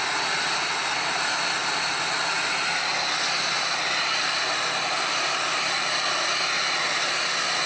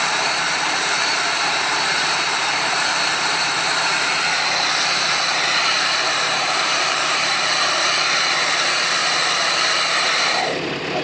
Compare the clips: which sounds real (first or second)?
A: first